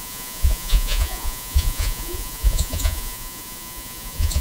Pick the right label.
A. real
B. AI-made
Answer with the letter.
B